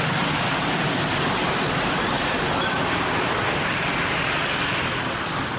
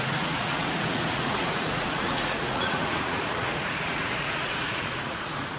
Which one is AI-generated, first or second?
second